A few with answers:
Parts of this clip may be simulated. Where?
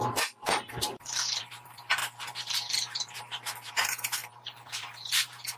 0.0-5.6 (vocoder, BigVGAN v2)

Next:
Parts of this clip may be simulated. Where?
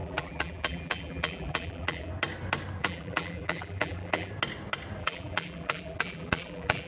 0.0-2.1 (vocoder, BigVGAN v2); 2.8-4.3; 5.0-6.9